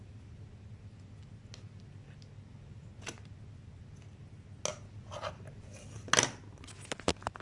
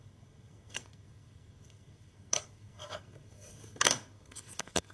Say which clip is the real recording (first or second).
first